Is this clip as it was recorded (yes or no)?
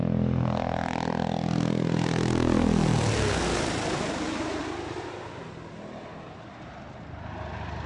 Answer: yes